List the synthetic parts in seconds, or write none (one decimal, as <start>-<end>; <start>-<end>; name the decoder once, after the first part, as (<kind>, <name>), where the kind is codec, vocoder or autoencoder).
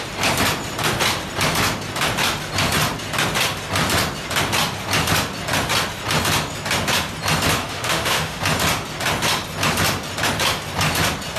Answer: 7.6-8.4 (autoencoder, DAC-VAE)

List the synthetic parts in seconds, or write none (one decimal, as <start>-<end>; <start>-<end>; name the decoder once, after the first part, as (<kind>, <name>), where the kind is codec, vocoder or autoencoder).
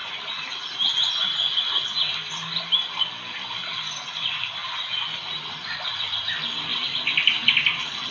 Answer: none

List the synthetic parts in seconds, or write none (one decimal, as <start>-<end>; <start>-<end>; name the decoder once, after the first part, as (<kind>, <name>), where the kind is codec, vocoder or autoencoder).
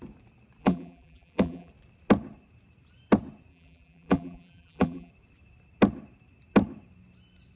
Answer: 0.6-1.7 (vocoder, BigVGAN v2); 3.5-5.1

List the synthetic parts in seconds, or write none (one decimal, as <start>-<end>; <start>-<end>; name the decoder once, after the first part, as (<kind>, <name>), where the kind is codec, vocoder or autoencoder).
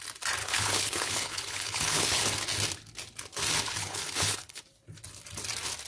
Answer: 0.4-2.2 (codec, HILCodec); 3.8-4.6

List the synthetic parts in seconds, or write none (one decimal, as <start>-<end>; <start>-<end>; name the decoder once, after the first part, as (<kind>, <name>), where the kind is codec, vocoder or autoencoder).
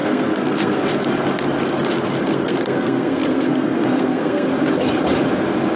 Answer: 0.0-0.8 (codec, SNAC); 2.3-4.5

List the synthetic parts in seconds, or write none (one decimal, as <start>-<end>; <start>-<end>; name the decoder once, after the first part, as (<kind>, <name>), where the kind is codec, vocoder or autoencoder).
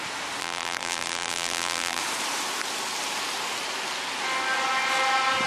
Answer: 0.4-2.0 (vocoder, BigVGAN v2)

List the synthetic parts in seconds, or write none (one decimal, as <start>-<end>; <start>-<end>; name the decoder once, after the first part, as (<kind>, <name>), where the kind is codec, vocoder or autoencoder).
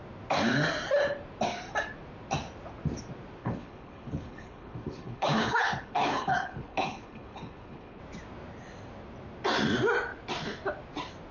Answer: 3.4-8.0 (codec, HILCodec)